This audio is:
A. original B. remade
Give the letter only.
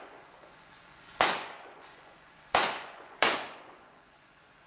B